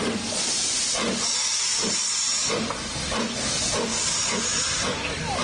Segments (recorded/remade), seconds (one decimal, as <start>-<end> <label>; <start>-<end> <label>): 0.0-1.7 recorded; 1.7-2.3 remade; 2.3-5.4 recorded